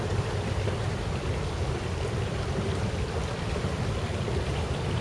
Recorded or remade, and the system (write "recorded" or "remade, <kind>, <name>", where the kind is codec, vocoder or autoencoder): recorded